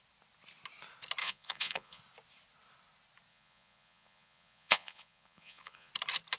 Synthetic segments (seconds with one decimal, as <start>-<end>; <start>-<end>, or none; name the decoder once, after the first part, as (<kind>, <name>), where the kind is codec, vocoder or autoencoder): 1.2-2.0 (vocoder, Vocos); 3.3-5.9